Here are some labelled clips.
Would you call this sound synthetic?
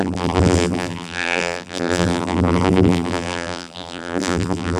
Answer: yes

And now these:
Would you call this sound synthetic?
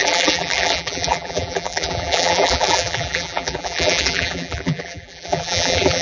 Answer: yes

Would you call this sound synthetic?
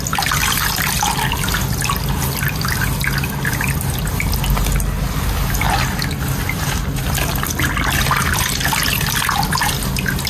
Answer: no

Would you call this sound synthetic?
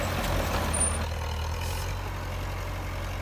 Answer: no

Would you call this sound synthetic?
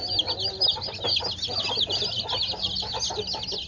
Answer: no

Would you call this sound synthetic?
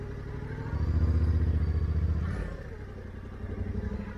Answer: no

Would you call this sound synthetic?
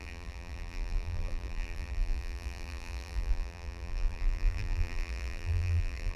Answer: yes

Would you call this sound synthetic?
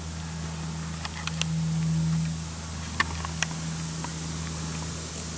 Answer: no